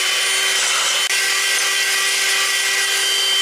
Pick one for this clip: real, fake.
real